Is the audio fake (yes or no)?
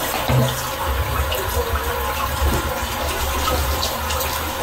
no